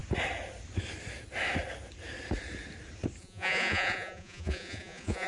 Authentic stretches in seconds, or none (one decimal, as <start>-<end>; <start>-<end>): 0.0-3.2